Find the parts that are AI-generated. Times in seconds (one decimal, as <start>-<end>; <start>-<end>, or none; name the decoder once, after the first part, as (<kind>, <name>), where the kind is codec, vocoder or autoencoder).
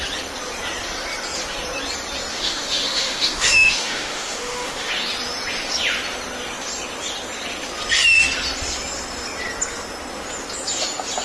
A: 2.3-4.9 (autoencoder, DAC-VAE)